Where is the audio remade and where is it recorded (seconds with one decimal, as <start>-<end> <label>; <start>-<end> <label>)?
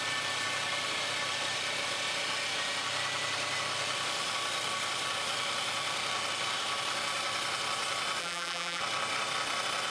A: 0.0-8.2 recorded; 8.2-8.8 remade; 8.8-9.9 recorded